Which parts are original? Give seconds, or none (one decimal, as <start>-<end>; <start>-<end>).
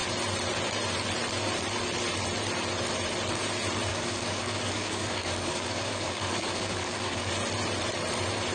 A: 0.0-3.9; 7.3-8.5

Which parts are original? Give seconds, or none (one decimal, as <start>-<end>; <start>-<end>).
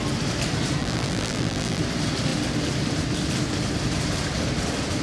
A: 0.0-0.8; 1.8-5.0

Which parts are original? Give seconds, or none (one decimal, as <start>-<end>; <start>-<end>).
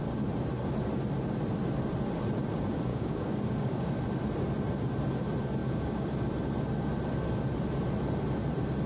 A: 0.0-2.9; 3.9-5.6; 6.3-8.9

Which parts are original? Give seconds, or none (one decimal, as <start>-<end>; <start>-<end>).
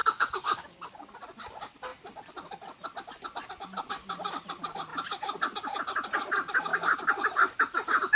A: 1.1-8.2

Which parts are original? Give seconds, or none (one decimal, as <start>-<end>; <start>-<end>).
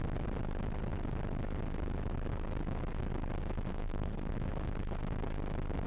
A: 0.0-3.7; 4.3-5.9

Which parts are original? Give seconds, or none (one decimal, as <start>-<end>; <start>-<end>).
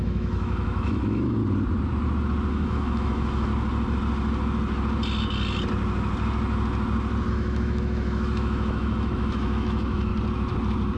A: 1.4-2.5; 3.5-7.3; 10.1-11.0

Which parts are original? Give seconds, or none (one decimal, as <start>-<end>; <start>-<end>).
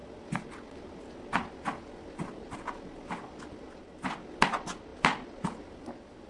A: 0.0-4.9; 5.6-6.3